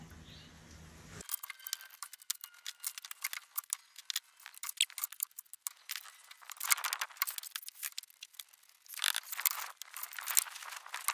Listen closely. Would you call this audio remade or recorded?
recorded